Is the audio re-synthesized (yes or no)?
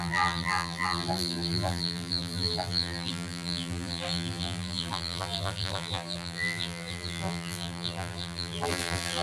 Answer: yes